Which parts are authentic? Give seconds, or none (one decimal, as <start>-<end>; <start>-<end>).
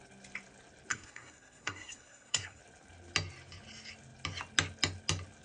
0.0-0.9; 2.6-5.4